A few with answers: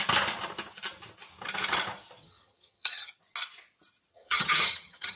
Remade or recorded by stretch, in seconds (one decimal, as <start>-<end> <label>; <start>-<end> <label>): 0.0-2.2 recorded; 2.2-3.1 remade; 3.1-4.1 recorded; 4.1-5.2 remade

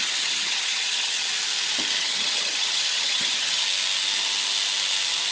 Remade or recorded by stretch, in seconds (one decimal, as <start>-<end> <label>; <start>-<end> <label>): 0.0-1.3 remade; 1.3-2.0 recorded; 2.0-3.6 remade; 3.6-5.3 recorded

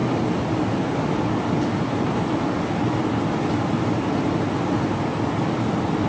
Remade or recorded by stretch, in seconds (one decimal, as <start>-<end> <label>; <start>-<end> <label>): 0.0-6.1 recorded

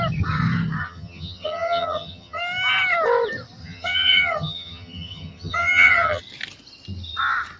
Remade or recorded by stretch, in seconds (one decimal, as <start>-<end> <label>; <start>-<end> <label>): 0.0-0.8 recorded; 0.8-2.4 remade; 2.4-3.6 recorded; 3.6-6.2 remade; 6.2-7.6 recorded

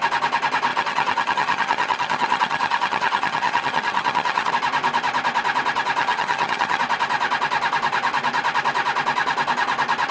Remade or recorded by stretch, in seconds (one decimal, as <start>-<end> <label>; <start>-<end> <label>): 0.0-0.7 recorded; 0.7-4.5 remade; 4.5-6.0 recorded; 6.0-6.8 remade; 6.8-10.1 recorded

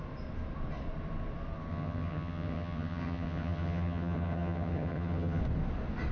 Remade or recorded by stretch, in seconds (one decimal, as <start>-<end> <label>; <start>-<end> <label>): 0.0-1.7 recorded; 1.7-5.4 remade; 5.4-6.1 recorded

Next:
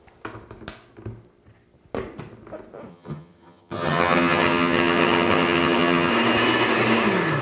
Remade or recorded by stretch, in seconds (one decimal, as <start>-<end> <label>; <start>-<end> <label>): 0.0-2.9 recorded; 2.9-6.1 remade; 6.1-7.4 recorded

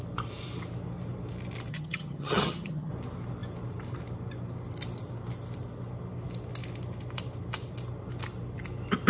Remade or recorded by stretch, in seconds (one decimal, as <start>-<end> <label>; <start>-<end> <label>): 0.0-1.7 recorded; 1.7-2.9 remade; 2.9-9.1 recorded